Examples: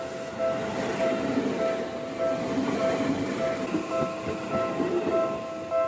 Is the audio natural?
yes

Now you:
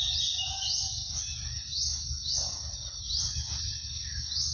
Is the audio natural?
yes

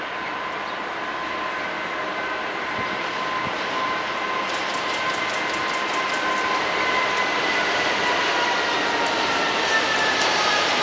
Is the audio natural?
yes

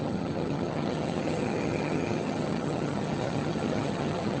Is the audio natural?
no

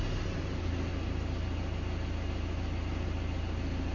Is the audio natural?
yes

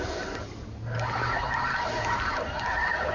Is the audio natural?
yes